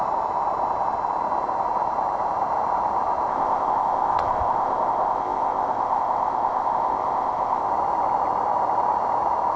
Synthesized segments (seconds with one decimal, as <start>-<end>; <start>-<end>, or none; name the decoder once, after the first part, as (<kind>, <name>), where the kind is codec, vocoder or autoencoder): 3.3-7.7 (codec, ZipCodec)